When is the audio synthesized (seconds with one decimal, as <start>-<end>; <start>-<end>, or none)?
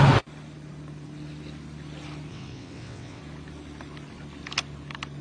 2.3-3.2